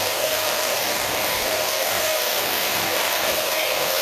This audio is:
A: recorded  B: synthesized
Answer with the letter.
B